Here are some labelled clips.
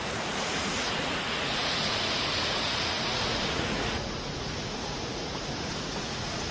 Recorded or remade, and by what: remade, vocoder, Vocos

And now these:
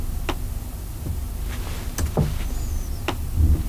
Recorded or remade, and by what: recorded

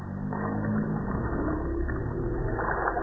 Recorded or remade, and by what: recorded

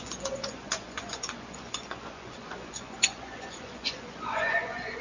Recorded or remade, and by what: remade, vocoder, Vocos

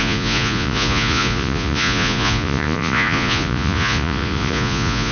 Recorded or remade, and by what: remade, vocoder, Vocos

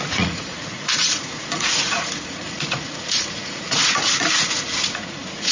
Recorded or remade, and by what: remade, vocoder, Vocos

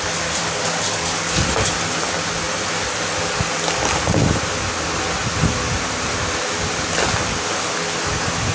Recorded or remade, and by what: recorded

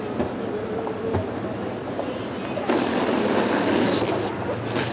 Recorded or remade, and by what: recorded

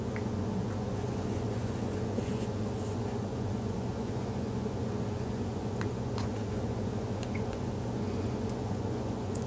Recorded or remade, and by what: remade, vocoder, Vocos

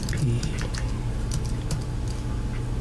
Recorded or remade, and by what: recorded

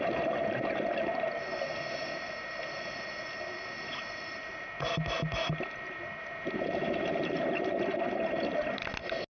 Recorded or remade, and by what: recorded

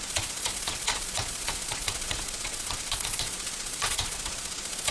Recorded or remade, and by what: remade, vocoder, Vocos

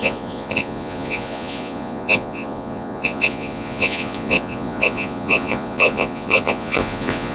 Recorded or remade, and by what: remade, vocoder, Vocos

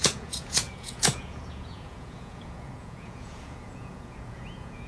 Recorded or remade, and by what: remade, vocoder, Vocos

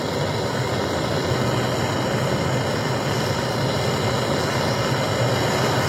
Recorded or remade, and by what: recorded